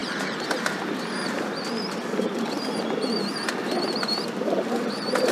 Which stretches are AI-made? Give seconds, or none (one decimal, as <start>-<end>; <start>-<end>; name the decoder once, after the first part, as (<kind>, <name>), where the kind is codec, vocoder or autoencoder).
none